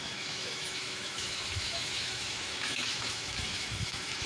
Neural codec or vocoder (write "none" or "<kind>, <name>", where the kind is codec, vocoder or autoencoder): autoencoder, DAC-VAE